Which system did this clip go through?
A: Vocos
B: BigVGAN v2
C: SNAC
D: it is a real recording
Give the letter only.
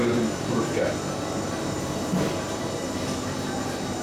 B